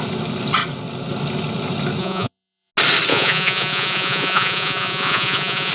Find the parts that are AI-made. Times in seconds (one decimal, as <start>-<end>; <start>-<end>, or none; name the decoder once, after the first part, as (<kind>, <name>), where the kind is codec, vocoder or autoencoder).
2.0-2.7 (vocoder, Vocos); 3.1-5.7